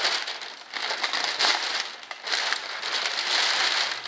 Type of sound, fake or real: real